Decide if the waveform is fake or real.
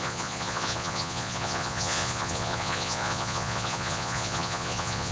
fake